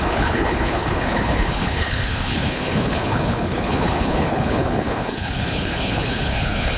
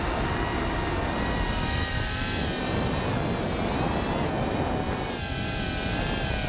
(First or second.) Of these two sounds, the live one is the second